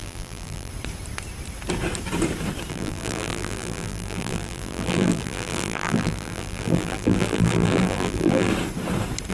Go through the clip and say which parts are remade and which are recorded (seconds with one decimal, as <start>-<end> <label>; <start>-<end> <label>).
0.0-0.7 remade; 0.7-2.7 recorded; 2.7-8.5 remade; 8.5-9.3 recorded